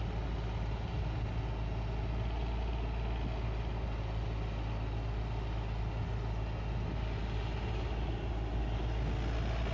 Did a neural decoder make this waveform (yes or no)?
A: no